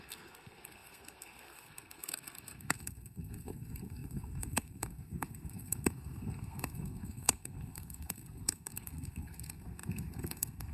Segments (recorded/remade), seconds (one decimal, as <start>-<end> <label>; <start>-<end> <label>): 0.0-10.7 remade